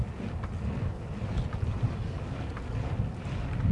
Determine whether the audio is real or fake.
real